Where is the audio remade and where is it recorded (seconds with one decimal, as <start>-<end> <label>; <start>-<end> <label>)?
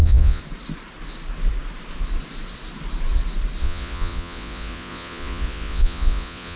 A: 0.0-0.4 remade; 0.4-3.6 recorded; 3.6-6.6 remade